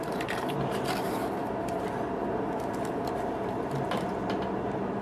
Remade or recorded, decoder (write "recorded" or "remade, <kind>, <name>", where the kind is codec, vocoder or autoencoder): recorded